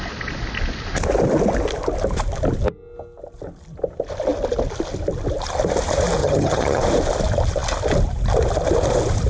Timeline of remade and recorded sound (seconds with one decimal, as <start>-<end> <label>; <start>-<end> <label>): 0.0-6.2 recorded; 6.2-6.8 remade; 6.8-9.3 recorded